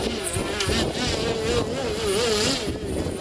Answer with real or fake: real